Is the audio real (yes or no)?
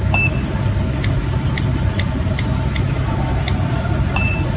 yes